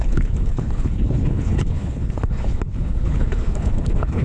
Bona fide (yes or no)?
no